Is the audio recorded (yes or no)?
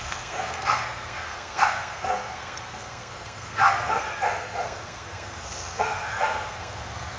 no